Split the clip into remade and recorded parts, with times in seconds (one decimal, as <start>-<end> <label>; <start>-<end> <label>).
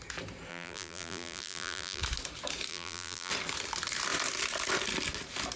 0.0-0.5 recorded; 0.5-2.0 remade; 2.0-2.7 recorded; 2.7-3.3 remade; 3.3-5.6 recorded